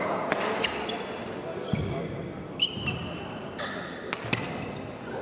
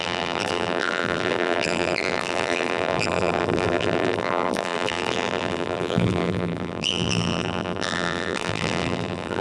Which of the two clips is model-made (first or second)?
second